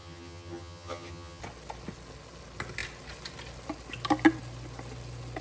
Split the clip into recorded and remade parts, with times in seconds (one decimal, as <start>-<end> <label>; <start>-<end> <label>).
0.0-1.4 remade; 1.4-5.4 recorded

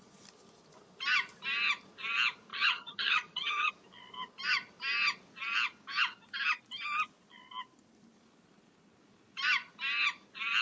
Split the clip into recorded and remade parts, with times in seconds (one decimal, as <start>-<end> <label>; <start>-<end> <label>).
0.0-2.5 recorded; 2.5-3.7 remade; 3.7-10.6 recorded

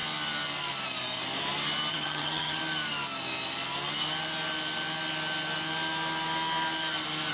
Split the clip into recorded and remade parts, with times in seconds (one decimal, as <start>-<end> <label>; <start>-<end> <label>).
0.0-1.9 recorded; 1.9-2.6 remade; 2.6-7.3 recorded

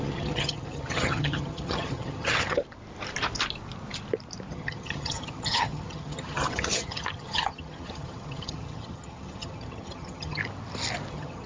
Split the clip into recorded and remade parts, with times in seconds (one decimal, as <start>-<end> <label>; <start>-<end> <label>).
0.0-2.6 remade; 2.6-4.5 recorded; 4.5-10.4 remade; 10.4-11.1 recorded; 11.1-11.5 remade

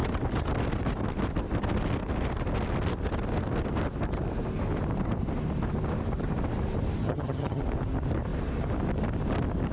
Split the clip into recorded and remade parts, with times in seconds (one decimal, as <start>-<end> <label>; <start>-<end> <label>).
0.0-7.0 recorded; 7.0-7.6 remade; 7.6-9.7 recorded

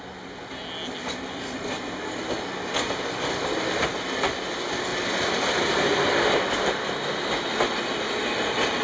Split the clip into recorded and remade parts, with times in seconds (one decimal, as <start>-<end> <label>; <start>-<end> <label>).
0.0-8.8 recorded

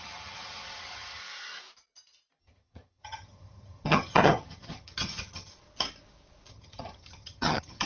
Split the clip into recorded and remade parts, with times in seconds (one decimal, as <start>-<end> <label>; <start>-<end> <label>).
0.0-1.2 remade; 1.2-2.4 recorded; 2.4-5.5 remade; 5.5-6.5 recorded; 6.5-7.9 remade